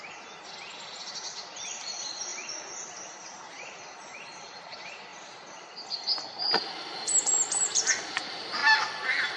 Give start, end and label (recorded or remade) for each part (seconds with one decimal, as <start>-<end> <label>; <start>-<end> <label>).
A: 0.0-9.4 remade